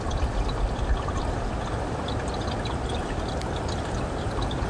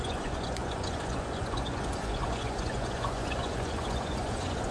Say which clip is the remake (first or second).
second